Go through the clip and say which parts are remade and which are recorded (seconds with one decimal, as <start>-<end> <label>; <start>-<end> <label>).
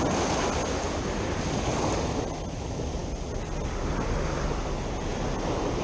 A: 0.0-5.8 recorded